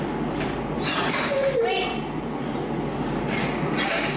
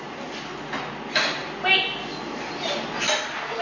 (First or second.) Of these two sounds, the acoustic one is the second